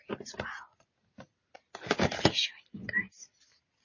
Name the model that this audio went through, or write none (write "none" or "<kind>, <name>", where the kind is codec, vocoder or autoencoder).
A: none